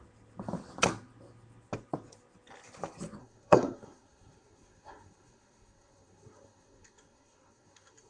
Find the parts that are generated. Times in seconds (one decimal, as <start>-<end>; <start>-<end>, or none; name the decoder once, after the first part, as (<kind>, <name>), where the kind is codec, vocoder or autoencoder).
3.2-8.1 (codec, SNAC)